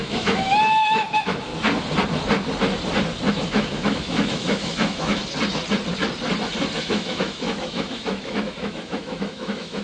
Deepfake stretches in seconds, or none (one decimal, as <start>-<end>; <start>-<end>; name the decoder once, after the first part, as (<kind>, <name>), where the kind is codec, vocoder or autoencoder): 0.0-1.5 (autoencoder, DAC-VAE); 3.3-5.2; 6.8-9.8